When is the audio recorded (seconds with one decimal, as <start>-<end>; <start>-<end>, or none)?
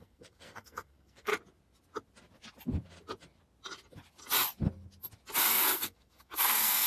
1.3-5.4